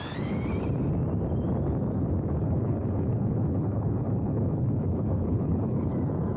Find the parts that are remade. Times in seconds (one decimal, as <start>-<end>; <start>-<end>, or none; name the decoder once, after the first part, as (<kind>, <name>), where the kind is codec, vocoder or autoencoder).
2.4-5.9 (codec, HILCodec)

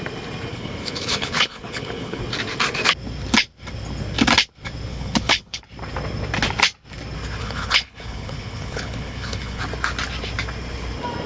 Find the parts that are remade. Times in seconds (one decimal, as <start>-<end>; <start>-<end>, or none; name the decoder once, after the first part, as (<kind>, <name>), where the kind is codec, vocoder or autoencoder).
0.5-2.2 (codec, HILCodec); 4.9-5.6; 7.4-9.6

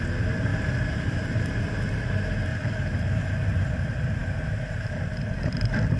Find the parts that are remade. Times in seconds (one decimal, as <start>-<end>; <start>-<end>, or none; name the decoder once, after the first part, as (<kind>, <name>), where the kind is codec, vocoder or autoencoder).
0.5-1.6 (vocoder, BigVGAN v2); 2.5-3.7

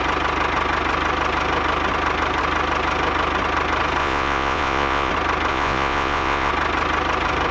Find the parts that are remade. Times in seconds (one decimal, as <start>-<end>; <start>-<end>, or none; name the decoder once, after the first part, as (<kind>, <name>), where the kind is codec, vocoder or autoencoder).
4.0-5.1 (vocoder, Vocos); 5.5-6.5

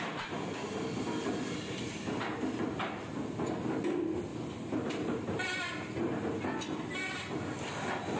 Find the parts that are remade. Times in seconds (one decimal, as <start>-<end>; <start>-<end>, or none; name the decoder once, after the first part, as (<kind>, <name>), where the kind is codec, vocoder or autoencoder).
4.3-5.8 (vocoder, BigVGAN v2)

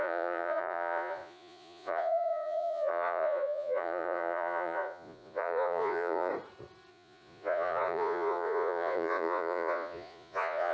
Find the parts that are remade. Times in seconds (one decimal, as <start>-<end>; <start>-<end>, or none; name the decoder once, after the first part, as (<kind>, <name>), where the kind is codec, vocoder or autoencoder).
0.0-6.3 (vocoder, Vocos); 6.9-10.7

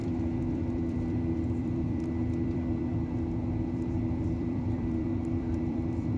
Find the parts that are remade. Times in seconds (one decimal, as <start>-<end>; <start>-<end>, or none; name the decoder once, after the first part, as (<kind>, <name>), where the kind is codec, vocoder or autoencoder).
0.0-2.8 (vocoder, BigVGAN v2); 3.6-6.2